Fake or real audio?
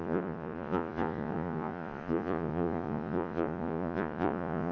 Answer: fake